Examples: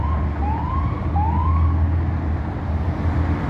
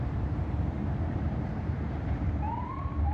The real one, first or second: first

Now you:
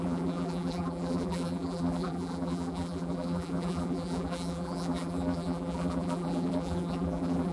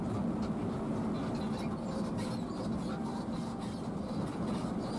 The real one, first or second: second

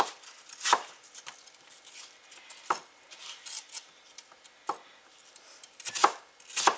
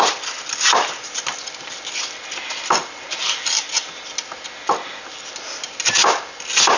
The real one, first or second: first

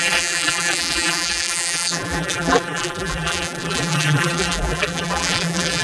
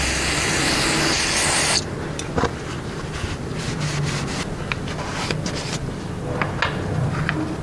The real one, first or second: second